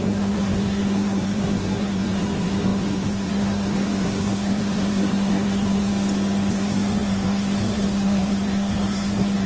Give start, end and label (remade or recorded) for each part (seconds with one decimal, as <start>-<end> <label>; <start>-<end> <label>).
0.0-5.9 remade; 5.9-6.5 recorded; 6.5-9.5 remade